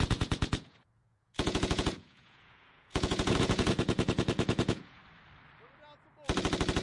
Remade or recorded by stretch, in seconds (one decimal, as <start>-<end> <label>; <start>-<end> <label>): 0.0-5.0 remade; 5.0-6.8 recorded